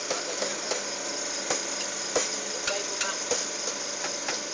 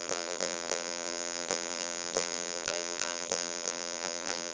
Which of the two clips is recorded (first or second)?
first